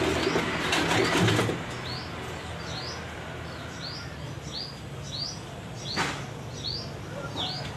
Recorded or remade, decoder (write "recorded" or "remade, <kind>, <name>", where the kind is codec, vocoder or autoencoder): recorded